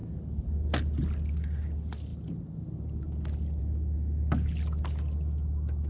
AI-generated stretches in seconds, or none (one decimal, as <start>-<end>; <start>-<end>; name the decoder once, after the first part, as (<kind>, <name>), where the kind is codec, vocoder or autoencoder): none